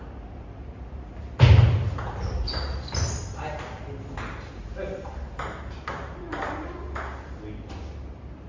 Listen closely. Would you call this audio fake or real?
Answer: real